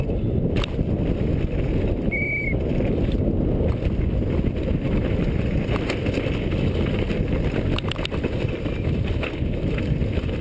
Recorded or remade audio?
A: recorded